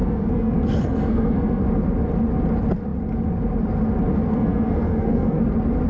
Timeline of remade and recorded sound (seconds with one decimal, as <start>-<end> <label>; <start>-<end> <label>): 0.0-1.6 remade; 1.6-4.3 recorded; 4.3-5.4 remade; 5.4-5.9 recorded